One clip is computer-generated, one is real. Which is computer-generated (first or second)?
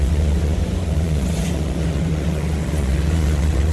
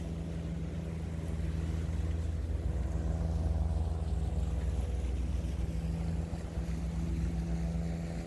first